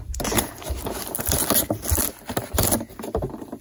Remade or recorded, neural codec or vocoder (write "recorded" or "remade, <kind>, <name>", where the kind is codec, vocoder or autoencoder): recorded